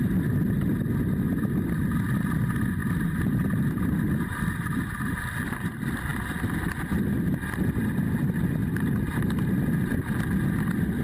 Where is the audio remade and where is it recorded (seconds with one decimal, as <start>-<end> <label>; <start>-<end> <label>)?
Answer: 0.0-2.8 recorded; 2.8-5.2 remade; 5.2-11.0 recorded